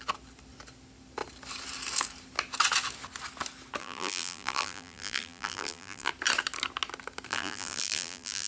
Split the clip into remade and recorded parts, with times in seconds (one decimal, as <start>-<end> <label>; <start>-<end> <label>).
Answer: 0.0-3.8 recorded; 3.8-6.1 remade; 6.1-7.3 recorded; 7.3-8.5 remade